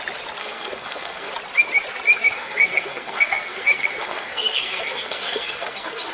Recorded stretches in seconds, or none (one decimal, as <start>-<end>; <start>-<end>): 0.0-0.4; 1.3-2.2